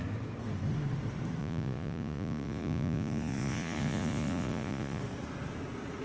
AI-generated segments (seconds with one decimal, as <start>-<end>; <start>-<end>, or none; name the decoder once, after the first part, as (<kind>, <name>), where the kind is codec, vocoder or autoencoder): 1.4-5.0 (vocoder, Vocos)